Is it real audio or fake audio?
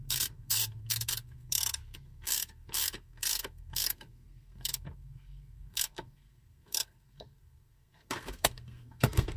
fake